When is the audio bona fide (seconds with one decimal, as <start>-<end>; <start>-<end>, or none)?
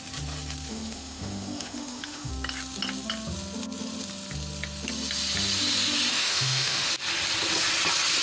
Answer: 0.0-0.7; 2.3-6.1; 6.9-8.2